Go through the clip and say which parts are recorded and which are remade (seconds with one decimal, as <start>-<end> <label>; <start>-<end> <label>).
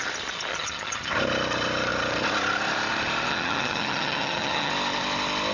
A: 0.0-0.5 recorded; 0.5-1.1 remade; 1.1-3.3 recorded; 3.3-4.7 remade; 4.7-5.5 recorded